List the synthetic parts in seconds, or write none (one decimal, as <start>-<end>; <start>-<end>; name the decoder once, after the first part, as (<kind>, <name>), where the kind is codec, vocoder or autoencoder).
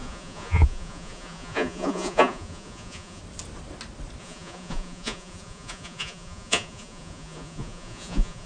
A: 0.0-3.2 (vocoder, Vocos); 4.2-8.5